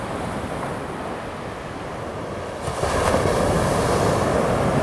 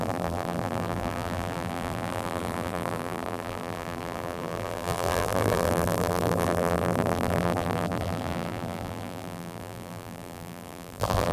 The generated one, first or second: second